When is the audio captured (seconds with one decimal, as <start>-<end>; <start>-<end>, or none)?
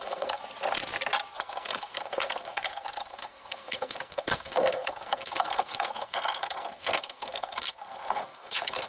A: 0.4-1.3